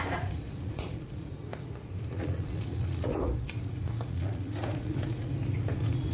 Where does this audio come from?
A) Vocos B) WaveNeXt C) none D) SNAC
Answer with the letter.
A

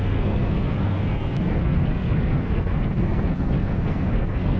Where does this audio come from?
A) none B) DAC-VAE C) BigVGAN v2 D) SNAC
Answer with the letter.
D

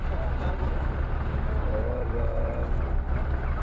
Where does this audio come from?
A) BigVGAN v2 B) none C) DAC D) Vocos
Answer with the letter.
B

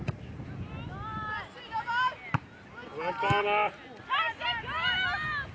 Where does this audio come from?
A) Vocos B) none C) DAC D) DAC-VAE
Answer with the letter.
B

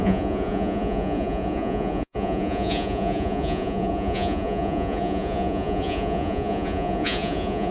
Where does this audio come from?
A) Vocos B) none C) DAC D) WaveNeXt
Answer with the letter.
A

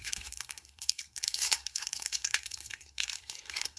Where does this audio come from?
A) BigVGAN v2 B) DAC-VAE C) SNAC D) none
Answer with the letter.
C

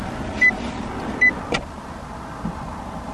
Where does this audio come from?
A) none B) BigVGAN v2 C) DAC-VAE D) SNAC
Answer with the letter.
A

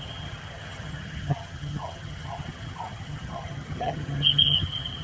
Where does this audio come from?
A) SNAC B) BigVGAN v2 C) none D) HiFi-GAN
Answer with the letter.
D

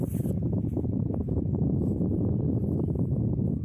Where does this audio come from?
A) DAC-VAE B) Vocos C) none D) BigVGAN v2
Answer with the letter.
C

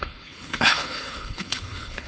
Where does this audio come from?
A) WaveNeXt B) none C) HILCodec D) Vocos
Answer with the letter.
C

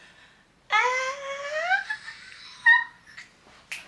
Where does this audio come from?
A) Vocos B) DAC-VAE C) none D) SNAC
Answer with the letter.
C